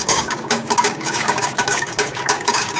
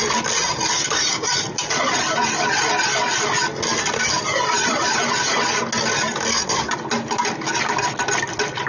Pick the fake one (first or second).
first